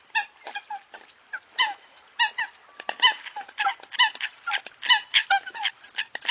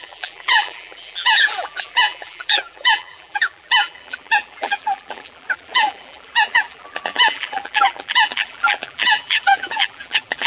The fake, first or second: second